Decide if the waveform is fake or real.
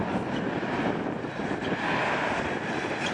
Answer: fake